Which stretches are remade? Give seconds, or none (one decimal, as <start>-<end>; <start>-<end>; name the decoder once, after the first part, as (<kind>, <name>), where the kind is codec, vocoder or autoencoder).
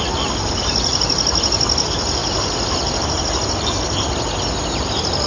0.0-2.2 (vocoder, BigVGAN v2); 2.8-3.4; 4.6-5.3